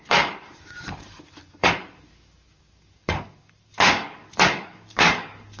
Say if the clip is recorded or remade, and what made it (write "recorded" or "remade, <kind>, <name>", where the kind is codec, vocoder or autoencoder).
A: remade, codec, DAC